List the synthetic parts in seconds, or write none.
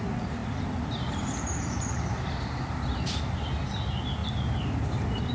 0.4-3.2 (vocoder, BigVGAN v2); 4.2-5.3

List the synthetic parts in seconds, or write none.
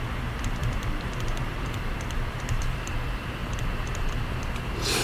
0.0-3.4 (vocoder, BigVGAN v2); 4.1-5.0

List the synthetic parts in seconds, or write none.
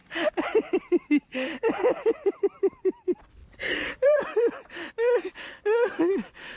3.4-4.9 (vocoder, BigVGAN v2)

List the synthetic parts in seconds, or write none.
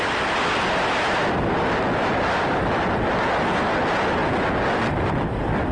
none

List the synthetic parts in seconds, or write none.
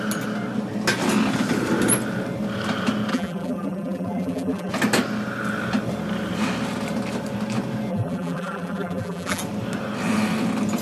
3.1-4.7 (vocoder, BigVGAN v2); 7.9-9.4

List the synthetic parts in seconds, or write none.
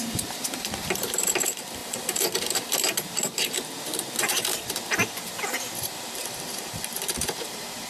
0.0-7.9 (vocoder, BigVGAN v2)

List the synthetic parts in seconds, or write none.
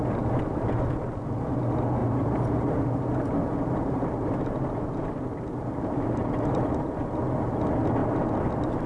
2.0-6.7 (vocoder, BigVGAN v2)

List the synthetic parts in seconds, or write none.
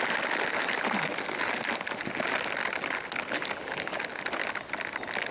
none